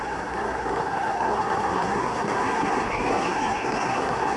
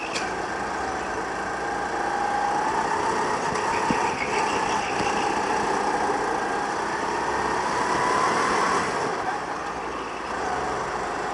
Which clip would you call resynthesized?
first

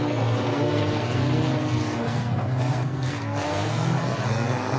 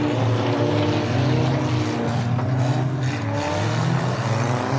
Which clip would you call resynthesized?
first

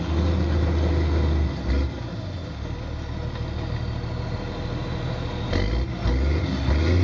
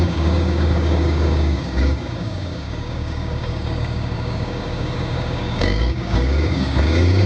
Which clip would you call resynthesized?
second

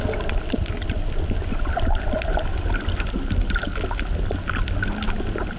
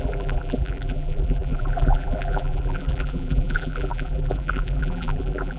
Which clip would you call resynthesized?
second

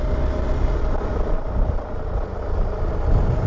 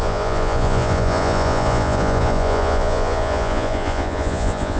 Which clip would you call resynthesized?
second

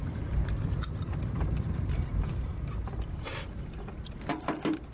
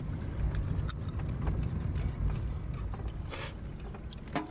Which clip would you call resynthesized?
first